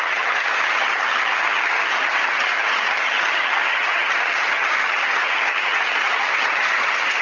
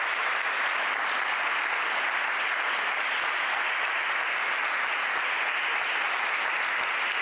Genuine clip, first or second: second